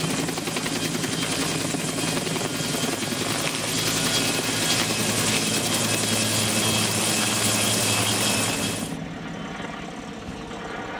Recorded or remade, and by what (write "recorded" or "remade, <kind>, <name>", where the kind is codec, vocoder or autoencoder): recorded